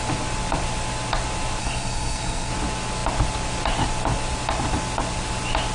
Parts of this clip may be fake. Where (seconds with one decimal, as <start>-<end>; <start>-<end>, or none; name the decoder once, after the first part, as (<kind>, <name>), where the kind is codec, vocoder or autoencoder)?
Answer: 1.6-2.5 (codec, SNAC)